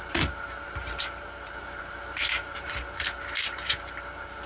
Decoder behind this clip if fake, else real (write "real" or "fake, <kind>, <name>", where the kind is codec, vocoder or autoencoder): fake, vocoder, BigVGAN v2